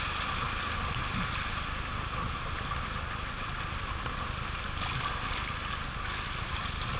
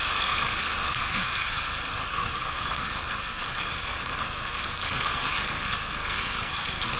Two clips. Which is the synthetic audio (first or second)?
second